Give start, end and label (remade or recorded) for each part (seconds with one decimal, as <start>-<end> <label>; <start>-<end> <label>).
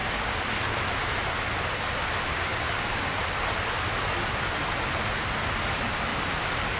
0.0-0.5 remade; 0.5-2.5 recorded; 2.5-3.2 remade; 3.2-6.8 recorded